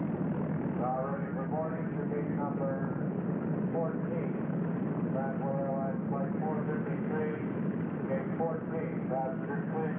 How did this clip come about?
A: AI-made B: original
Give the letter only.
B